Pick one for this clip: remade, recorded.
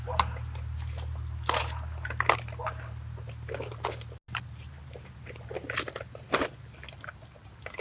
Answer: recorded